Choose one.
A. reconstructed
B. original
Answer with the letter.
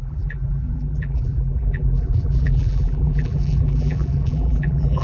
A